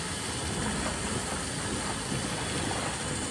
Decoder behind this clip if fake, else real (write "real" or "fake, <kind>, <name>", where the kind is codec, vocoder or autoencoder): real